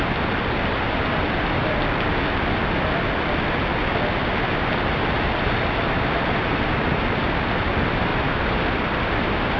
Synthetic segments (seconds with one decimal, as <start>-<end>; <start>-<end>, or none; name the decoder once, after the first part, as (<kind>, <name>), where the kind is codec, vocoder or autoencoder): none